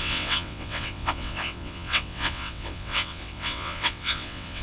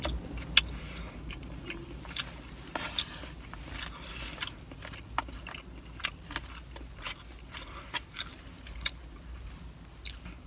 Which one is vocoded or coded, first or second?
first